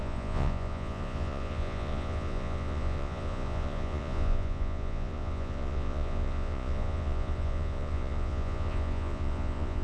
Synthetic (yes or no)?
yes